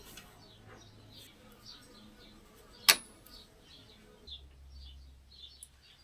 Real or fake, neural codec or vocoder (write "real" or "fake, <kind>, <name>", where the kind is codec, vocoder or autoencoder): real